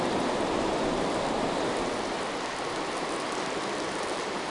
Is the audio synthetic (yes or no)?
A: no